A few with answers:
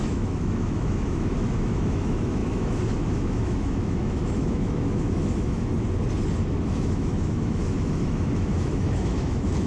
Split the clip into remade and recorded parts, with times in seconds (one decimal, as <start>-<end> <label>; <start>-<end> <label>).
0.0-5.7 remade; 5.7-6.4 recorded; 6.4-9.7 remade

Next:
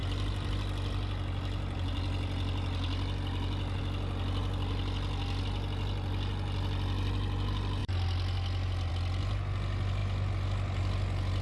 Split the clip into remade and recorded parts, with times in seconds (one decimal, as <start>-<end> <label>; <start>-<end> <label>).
0.0-11.4 recorded

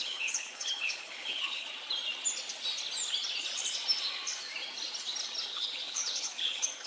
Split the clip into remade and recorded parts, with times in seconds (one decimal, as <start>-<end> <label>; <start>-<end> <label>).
0.0-1.7 remade; 1.7-5.5 recorded; 5.5-6.9 remade

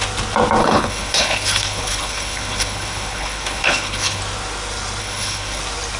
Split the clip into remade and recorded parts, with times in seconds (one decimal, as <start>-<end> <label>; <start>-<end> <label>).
0.0-0.6 recorded; 0.6-4.2 remade; 4.2-5.0 recorded; 5.0-5.6 remade; 5.6-6.0 recorded

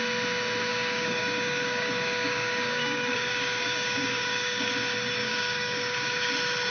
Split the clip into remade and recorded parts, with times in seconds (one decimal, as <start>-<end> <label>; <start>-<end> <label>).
0.0-0.7 recorded; 0.7-4.7 remade; 4.7-5.2 recorded; 5.2-6.3 remade; 6.3-6.7 recorded

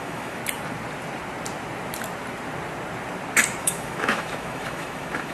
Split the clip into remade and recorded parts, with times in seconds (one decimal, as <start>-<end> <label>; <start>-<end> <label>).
0.0-0.4 remade; 0.4-3.6 recorded; 3.6-5.3 remade

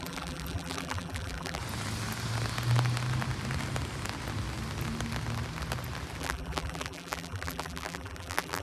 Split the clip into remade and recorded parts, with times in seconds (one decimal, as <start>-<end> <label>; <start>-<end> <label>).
0.0-1.6 remade; 1.6-6.2 recorded; 6.2-8.6 remade

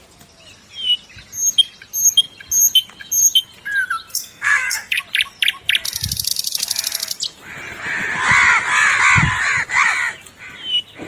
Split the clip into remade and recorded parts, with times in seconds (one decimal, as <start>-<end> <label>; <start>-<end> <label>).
0.0-4.1 recorded; 4.1-5.0 remade; 5.0-11.1 recorded